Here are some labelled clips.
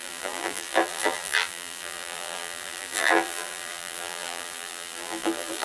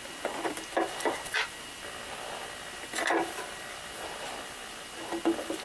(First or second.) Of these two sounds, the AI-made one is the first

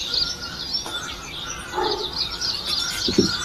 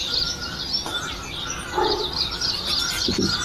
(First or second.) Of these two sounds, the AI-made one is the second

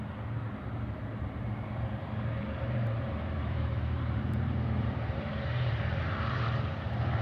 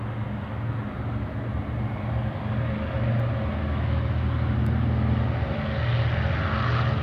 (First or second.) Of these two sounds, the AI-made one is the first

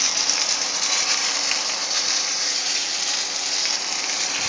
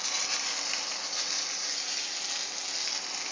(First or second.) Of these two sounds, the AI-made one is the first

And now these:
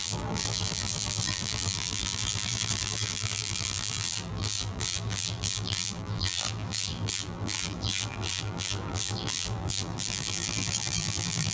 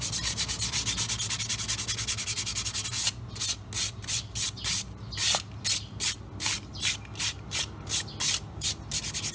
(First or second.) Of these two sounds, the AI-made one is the first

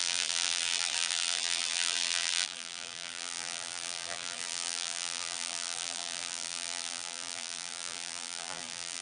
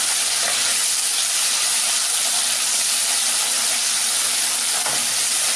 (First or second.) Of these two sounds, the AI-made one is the first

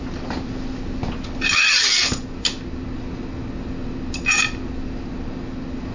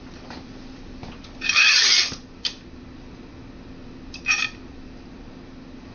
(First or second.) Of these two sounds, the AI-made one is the second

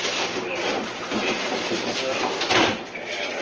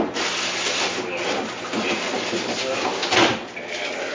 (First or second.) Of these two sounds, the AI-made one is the first